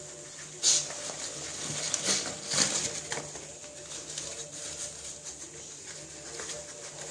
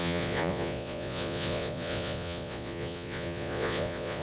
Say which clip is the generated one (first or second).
second